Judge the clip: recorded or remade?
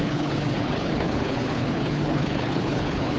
remade